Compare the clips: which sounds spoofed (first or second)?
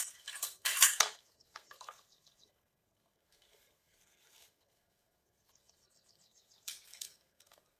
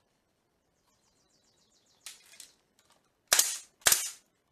first